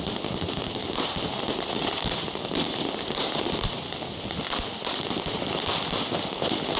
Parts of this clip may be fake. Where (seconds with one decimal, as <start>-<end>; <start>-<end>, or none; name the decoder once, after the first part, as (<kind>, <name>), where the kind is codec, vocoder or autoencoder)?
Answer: none